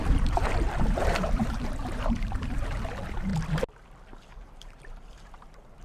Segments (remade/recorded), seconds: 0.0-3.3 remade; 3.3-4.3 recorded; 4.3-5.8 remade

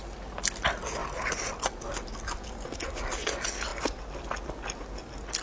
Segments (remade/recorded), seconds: 0.0-5.4 recorded